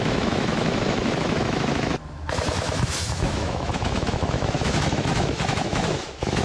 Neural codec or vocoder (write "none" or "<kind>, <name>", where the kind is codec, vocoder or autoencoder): autoencoder, DAC-VAE